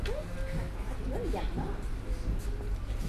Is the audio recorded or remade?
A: recorded